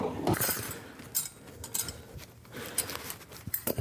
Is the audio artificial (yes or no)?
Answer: no